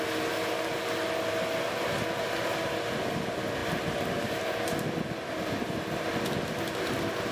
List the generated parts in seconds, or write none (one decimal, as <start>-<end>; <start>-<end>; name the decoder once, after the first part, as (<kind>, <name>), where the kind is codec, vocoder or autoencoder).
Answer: none